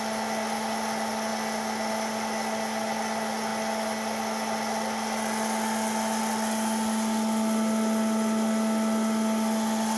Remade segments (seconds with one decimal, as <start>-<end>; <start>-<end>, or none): none